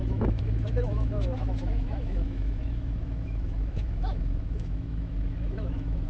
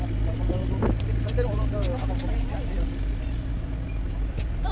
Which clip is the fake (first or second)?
first